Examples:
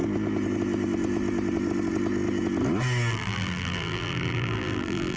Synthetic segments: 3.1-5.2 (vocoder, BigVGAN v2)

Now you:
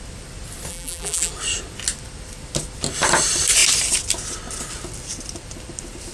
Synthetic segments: 0.7-1.3 (vocoder, BigVGAN v2)